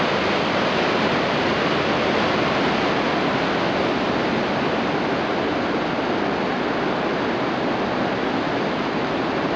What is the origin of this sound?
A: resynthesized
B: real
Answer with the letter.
B